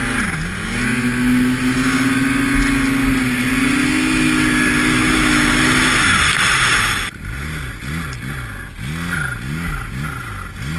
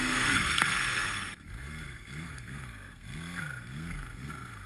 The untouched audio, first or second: first